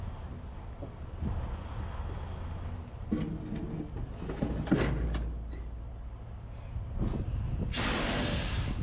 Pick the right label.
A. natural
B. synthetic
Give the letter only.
A